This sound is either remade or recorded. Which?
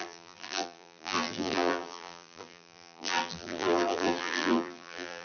remade